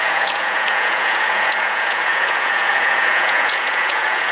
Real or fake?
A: fake